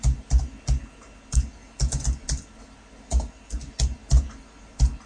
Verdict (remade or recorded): recorded